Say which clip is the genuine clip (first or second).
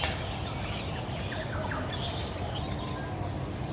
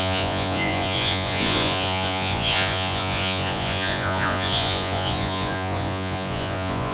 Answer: first